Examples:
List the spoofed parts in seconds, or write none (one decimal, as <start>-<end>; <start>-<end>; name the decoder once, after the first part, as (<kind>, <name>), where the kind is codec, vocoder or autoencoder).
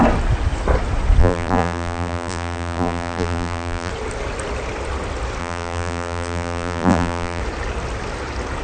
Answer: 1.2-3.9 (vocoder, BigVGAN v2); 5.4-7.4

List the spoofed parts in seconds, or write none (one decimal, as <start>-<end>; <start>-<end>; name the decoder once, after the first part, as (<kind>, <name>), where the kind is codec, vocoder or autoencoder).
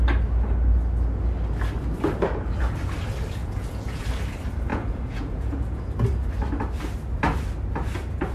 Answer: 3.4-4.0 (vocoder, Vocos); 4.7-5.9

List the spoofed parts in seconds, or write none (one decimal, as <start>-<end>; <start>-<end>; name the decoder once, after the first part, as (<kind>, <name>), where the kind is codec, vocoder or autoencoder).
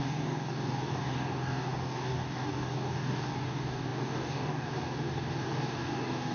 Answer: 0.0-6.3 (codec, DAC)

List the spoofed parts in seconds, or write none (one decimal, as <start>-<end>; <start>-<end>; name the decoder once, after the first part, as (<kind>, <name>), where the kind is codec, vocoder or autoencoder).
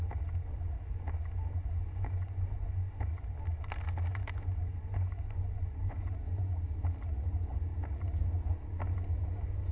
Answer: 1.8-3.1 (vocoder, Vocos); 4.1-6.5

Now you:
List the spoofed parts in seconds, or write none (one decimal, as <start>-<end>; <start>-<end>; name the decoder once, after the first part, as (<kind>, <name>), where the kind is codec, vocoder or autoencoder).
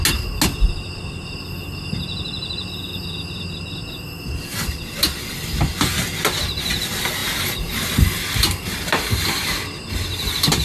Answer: none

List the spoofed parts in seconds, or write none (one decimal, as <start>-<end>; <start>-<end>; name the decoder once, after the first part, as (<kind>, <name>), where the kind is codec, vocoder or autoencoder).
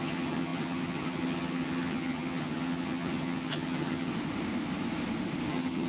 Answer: 0.0-4.1 (vocoder, HiFi-GAN); 5.5-5.9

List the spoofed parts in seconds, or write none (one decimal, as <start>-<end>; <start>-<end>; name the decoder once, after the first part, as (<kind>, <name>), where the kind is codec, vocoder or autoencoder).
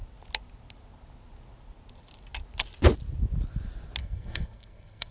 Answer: 4.0-5.1 (codec, SNAC)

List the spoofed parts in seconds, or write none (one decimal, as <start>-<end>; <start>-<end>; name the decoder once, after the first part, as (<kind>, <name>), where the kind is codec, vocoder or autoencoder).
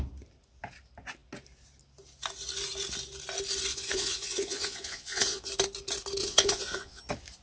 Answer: 3.7-5.5 (vocoder, Vocos); 6.2-7.0